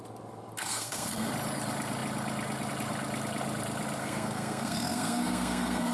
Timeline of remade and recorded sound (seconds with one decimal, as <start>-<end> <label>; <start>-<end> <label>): 0.0-0.6 recorded; 0.6-1.3 remade; 1.3-4.0 recorded; 4.0-5.9 remade